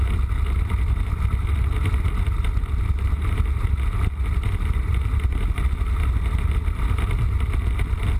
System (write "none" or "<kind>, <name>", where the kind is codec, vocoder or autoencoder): none